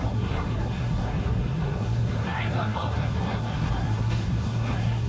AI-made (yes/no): yes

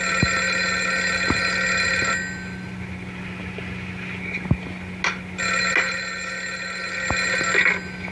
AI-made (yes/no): no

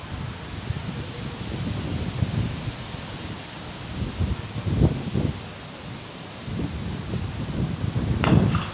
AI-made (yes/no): no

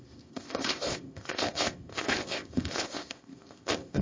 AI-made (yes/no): yes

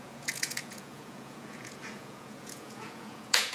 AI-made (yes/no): yes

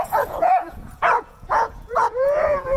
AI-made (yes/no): yes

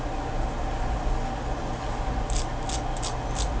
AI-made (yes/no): no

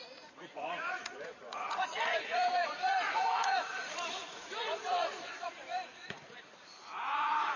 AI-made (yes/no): yes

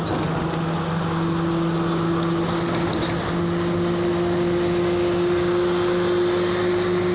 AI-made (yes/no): no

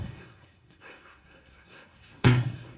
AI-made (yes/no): yes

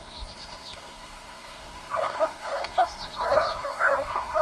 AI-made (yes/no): yes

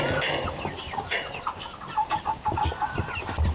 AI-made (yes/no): no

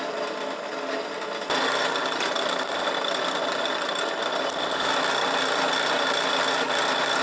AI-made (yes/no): no